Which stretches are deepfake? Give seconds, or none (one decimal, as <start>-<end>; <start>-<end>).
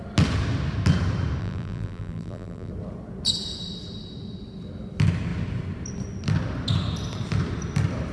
1.4-2.7